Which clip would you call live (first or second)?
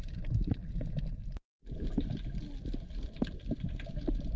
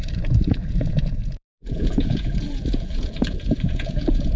first